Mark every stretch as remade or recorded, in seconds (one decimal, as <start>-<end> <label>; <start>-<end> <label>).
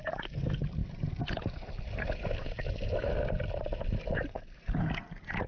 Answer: 0.0-5.5 recorded